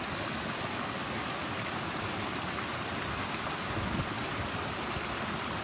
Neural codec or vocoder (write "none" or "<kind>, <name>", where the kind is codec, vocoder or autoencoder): none